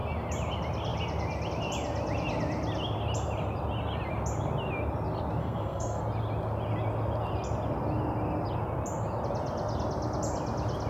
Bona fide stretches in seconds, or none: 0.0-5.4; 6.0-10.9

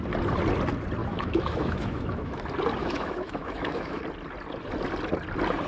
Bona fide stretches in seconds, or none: 0.0-1.0; 2.4-2.8; 4.0-5.7

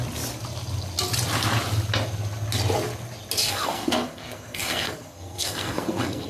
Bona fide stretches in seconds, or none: 0.0-3.4

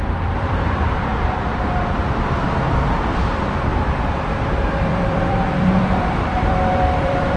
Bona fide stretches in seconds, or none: 1.1-1.9

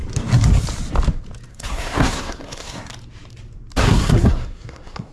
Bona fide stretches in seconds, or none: 0.0-1.5; 2.9-3.8